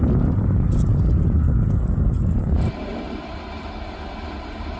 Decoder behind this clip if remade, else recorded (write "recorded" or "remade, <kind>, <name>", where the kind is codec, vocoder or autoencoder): recorded